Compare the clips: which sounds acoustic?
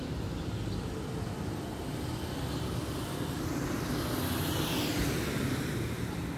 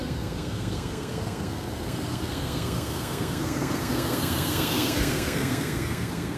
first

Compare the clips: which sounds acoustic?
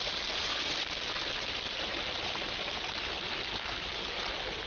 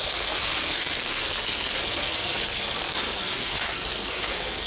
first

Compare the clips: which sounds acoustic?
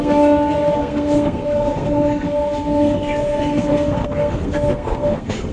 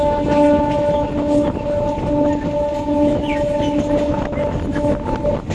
second